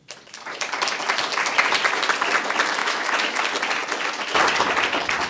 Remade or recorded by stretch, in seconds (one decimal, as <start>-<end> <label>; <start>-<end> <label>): 0.0-2.8 recorded; 2.8-3.4 remade; 3.4-5.3 recorded